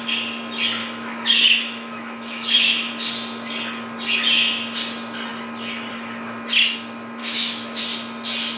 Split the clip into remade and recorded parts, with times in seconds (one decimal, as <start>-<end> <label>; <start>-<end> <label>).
0.0-0.8 recorded; 0.8-2.9 remade; 2.9-7.2 recorded; 7.2-7.8 remade; 7.8-8.6 recorded